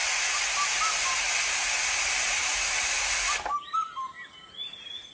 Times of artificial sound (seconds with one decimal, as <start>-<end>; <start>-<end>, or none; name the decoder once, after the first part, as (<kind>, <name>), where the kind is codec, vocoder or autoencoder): none